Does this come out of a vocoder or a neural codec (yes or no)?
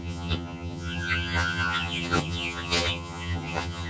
yes